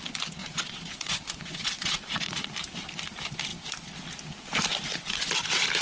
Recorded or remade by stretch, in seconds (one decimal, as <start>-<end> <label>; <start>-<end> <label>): 0.0-0.4 recorded; 0.4-2.5 remade; 2.5-5.8 recorded